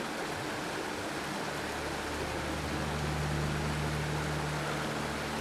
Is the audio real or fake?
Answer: real